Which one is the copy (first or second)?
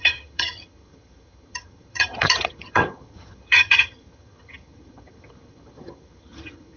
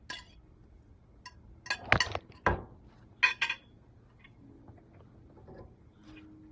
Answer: first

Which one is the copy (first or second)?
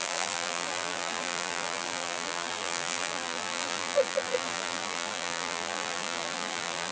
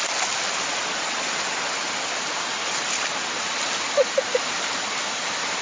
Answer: first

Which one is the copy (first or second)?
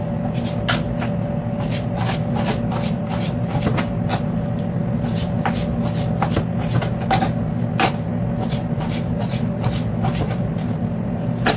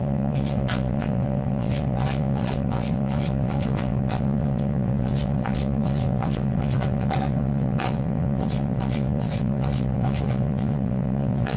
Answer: second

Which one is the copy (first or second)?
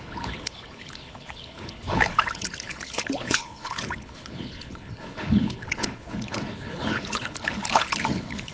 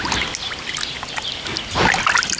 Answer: first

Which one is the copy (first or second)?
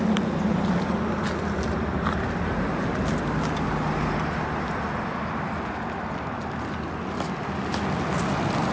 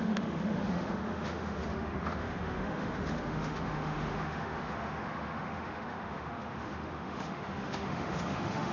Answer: second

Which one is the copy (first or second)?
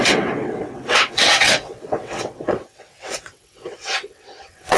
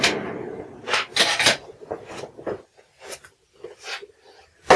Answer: first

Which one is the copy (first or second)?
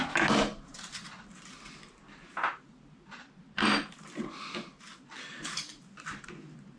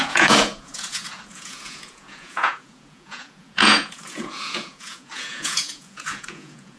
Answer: second